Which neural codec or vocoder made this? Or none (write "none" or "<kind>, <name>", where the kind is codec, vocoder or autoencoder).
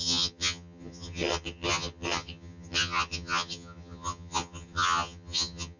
vocoder, HiFi-GAN